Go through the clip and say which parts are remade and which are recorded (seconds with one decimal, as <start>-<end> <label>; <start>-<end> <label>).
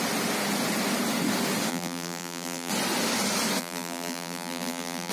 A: 0.0-1.7 recorded; 1.7-2.7 remade; 2.7-3.6 recorded; 3.6-5.1 remade